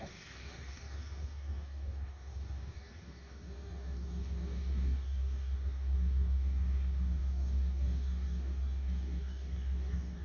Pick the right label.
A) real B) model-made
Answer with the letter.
B